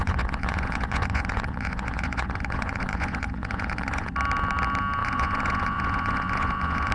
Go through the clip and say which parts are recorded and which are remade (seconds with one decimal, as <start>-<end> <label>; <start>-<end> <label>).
0.0-4.1 remade; 4.1-5.0 recorded; 5.0-6.9 remade